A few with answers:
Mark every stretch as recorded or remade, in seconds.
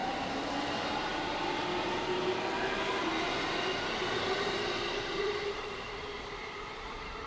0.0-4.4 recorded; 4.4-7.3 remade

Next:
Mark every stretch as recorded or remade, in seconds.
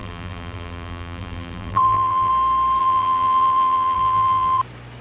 0.0-2.3 remade; 2.3-2.8 recorded; 2.8-4.6 remade; 4.6-5.0 recorded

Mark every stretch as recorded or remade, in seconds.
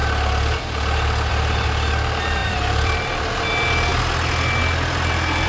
0.0-2.4 recorded; 2.4-3.3 remade; 3.3-5.5 recorded